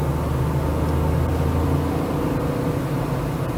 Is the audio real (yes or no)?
yes